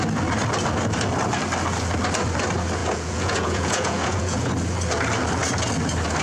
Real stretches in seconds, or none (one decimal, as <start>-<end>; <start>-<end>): 0.0-2.8; 4.5-6.2